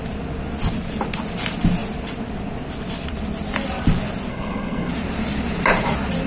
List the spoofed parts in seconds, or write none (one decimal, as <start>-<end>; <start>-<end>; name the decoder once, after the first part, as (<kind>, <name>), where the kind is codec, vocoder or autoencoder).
4.3-4.9 (codec, SNAC)